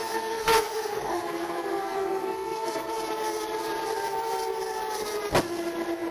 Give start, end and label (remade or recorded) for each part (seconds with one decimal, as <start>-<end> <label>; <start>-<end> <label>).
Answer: 0.0-2.9 remade; 2.9-6.1 recorded

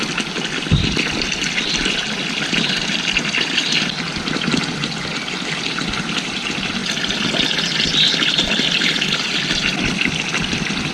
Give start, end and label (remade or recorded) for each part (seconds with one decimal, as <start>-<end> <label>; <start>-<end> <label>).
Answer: 0.0-10.9 recorded